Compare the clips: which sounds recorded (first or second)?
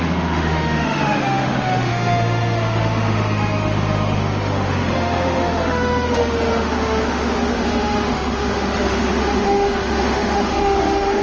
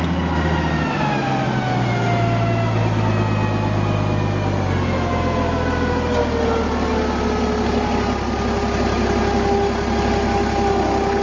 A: second